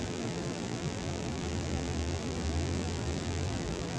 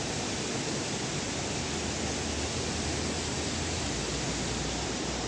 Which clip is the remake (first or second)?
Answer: first